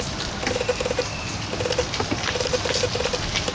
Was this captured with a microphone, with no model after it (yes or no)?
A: yes